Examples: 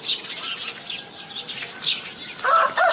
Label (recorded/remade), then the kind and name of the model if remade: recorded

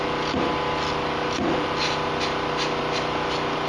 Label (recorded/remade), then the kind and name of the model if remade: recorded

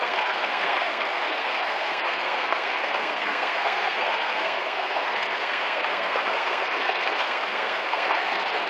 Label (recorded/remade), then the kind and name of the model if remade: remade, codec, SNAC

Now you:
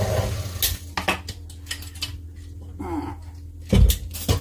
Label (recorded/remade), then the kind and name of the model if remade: recorded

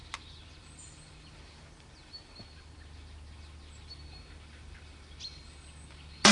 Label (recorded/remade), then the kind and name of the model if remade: recorded